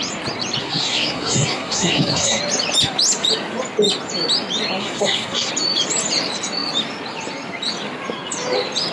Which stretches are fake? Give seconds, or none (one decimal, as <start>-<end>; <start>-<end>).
0.6-2.4; 4.8-5.5